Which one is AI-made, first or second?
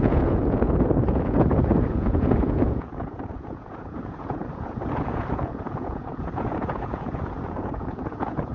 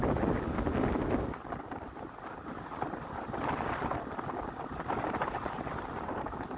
first